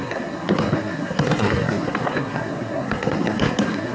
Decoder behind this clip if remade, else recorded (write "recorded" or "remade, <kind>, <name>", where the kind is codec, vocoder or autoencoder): remade, codec, SNAC